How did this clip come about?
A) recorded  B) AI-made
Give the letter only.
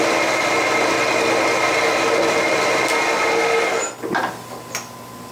A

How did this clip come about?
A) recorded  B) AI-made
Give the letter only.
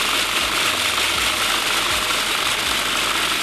A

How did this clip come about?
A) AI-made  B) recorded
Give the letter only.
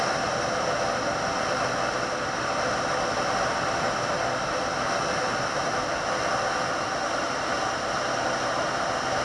B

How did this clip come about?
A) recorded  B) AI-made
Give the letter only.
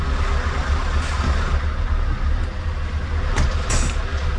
A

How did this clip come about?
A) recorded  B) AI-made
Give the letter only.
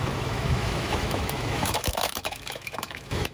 B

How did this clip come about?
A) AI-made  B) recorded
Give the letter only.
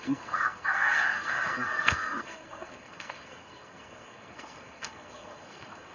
A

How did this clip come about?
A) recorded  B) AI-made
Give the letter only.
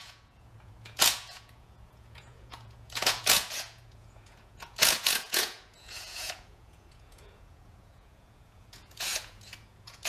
B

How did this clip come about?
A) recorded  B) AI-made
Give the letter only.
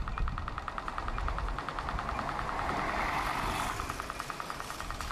A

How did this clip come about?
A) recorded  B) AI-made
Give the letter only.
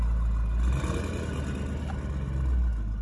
A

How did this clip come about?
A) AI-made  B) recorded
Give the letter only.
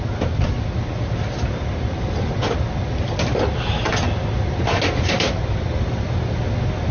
B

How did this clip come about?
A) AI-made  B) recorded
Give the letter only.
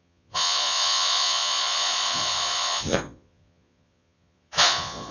A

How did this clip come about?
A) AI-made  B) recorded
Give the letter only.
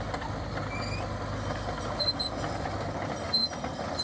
B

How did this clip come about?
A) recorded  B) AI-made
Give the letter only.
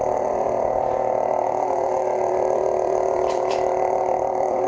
B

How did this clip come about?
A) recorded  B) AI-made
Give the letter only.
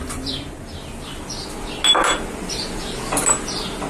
A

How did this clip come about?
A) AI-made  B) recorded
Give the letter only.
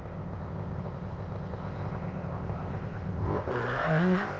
A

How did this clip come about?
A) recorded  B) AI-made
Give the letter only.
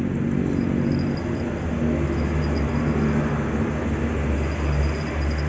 A